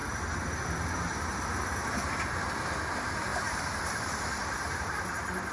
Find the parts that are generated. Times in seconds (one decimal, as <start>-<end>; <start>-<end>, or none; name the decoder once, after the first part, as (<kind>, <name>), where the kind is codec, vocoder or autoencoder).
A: none